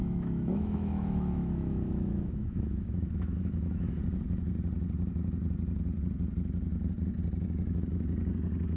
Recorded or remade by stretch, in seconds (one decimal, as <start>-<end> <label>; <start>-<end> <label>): 0.0-4.0 remade; 4.0-8.8 recorded